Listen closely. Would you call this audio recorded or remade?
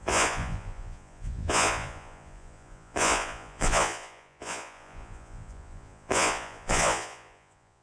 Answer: remade